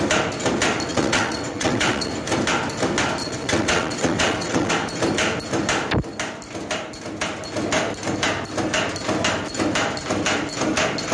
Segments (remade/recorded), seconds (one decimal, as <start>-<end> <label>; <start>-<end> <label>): 0.0-0.9 recorded; 0.9-2.1 remade; 2.1-3.2 recorded; 3.2-4.7 remade; 4.7-11.1 recorded